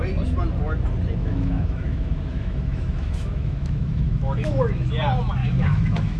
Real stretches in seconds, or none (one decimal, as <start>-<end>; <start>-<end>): 0.0-1.2; 4.9-5.4